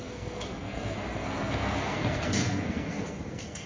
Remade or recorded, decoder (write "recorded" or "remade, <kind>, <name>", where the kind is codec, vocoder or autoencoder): remade, codec, SNAC